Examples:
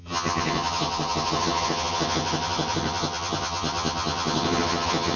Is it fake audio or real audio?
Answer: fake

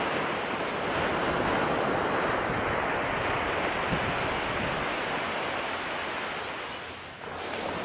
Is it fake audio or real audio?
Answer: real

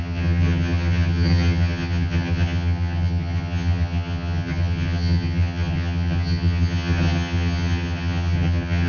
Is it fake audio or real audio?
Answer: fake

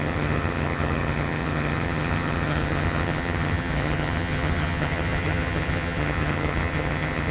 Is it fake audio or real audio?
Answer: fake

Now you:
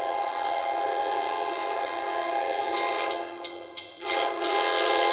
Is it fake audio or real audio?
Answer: fake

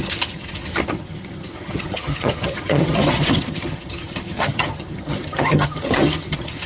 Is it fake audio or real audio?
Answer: fake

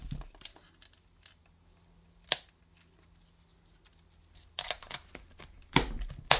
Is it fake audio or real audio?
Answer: real